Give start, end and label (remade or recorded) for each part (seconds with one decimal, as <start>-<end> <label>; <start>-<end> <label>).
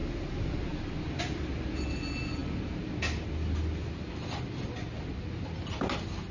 0.0-6.3 recorded